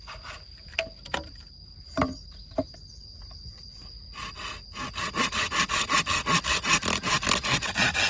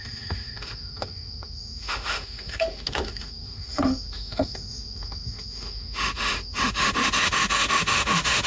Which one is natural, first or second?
first